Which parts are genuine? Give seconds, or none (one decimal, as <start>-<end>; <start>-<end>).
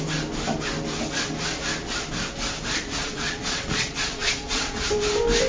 0.0-3.0; 4.9-5.5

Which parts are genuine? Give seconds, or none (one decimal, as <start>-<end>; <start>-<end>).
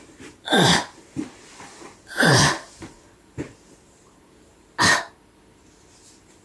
4.5-6.4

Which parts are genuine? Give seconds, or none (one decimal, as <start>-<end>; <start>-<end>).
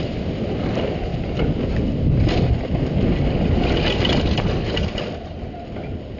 0.0-6.2